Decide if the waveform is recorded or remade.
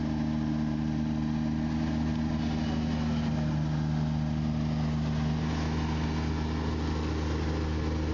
recorded